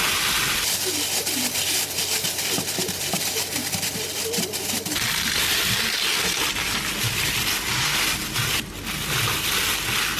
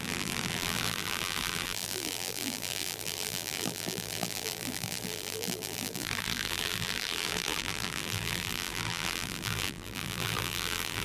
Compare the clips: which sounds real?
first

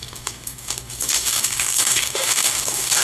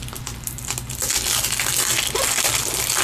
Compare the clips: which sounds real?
second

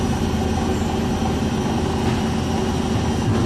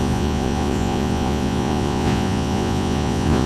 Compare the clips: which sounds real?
first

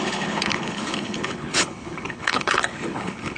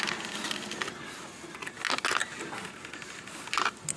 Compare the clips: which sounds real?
second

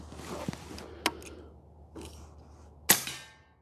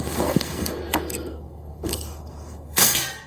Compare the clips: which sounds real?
first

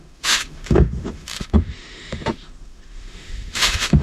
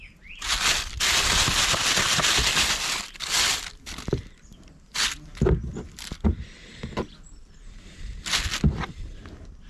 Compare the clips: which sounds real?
second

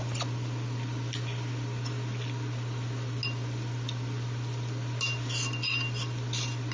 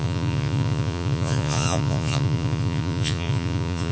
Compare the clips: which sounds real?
first